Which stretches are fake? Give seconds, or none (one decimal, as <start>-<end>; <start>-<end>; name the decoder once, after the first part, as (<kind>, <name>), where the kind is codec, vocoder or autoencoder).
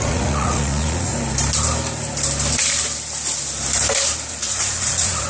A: 0.0-1.1 (vocoder, Vocos); 4.3-5.3